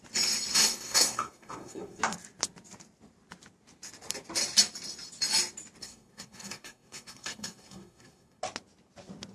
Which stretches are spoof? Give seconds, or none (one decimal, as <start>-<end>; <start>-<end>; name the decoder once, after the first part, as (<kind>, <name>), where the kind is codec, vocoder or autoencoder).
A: 0.5-2.0 (codec, SNAC); 5.8-8.4